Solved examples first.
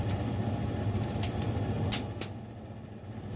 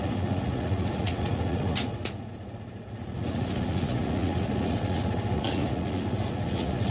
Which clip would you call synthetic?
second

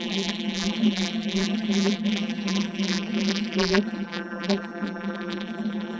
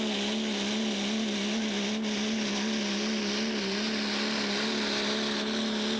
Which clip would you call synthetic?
first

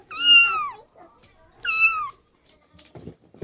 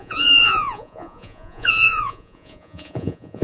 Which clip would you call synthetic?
second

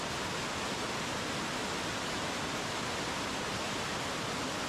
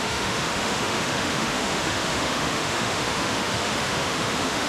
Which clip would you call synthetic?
second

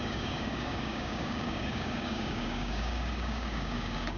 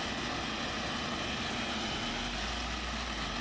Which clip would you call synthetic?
first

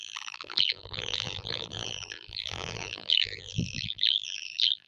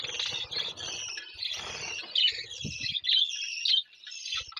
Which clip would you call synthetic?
first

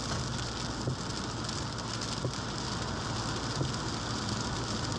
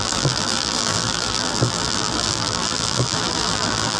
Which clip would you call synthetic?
second